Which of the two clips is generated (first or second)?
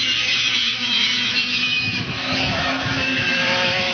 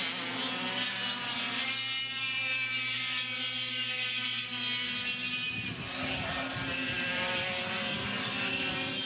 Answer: first